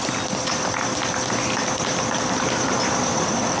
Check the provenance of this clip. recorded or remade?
recorded